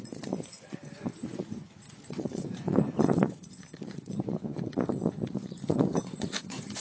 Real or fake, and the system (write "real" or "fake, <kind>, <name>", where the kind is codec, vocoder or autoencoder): fake, vocoder, Vocos